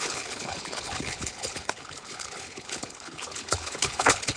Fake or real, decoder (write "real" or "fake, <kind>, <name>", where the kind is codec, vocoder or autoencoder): fake, codec, HILCodec